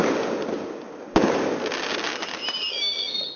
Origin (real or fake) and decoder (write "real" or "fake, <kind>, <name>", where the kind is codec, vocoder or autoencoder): real